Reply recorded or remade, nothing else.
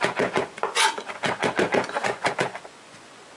remade